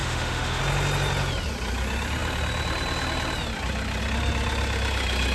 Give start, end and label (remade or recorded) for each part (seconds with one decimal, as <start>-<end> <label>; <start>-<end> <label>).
0.0-0.6 remade; 0.6-5.3 recorded